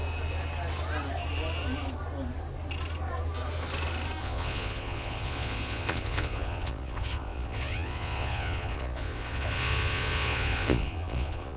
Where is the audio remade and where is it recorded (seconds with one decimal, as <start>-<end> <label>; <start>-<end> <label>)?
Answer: 0.0-4.2 recorded; 4.2-11.6 remade